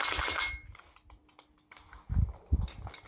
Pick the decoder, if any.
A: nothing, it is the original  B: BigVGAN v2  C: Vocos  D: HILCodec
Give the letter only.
A